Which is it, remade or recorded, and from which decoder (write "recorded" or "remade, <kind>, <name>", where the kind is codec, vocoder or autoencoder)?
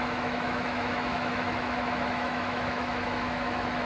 remade, autoencoder, DAC-VAE